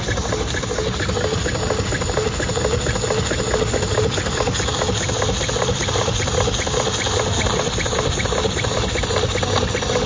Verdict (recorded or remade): recorded